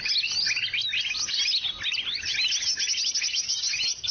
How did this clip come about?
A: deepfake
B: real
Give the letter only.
B